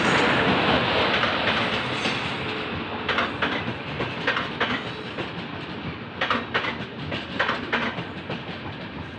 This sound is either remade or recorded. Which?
recorded